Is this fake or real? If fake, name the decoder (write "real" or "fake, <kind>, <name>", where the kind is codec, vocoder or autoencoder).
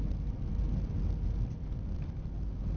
real